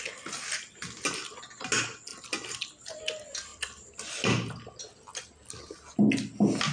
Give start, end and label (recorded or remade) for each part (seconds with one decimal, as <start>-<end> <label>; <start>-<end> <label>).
0.0-2.1 recorded; 2.1-3.0 remade; 3.0-6.7 recorded